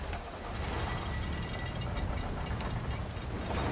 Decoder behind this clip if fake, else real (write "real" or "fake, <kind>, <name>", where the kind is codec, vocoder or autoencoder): real